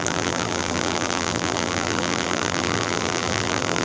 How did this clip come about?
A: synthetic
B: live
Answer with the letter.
A